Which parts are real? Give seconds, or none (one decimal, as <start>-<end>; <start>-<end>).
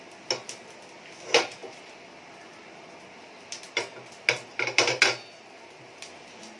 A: 0.0-6.6